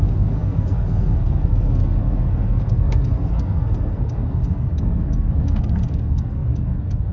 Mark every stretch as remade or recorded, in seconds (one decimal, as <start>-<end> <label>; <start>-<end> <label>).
0.0-7.1 remade